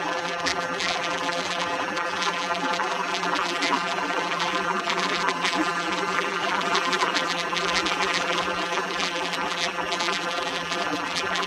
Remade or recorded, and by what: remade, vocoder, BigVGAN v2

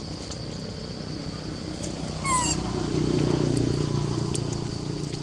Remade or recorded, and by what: recorded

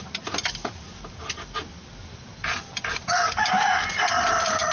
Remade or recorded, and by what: recorded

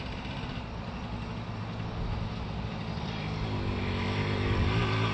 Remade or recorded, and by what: recorded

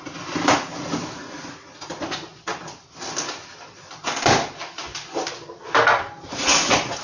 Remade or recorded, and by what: recorded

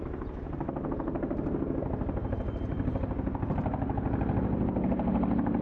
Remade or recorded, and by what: recorded